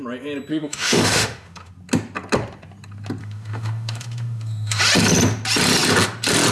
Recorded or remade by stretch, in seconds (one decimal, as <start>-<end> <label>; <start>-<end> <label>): 0.0-0.5 recorded; 0.5-1.7 remade; 1.7-3.2 recorded; 3.2-4.8 remade; 4.8-6.5 recorded